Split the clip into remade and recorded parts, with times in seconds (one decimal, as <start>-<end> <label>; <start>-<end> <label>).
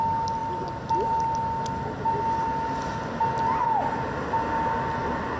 0.0-5.4 recorded